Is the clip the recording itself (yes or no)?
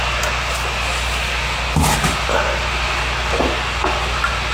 yes